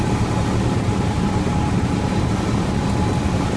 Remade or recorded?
recorded